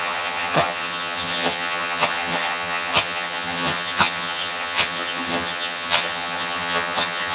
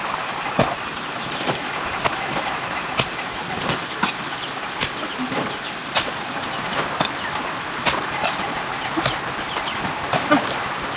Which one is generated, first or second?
first